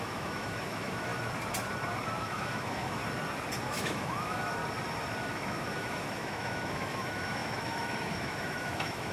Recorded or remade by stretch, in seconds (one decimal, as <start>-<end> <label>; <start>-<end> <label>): 0.0-1.1 remade; 1.1-2.2 recorded; 2.2-3.0 remade; 3.0-3.6 recorded; 3.6-4.6 remade; 4.6-5.2 recorded; 5.2-9.1 remade

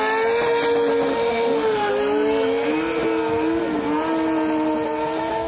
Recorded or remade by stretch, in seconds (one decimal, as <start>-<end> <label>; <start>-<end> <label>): 0.0-1.1 recorded; 1.1-1.9 remade; 1.9-5.5 recorded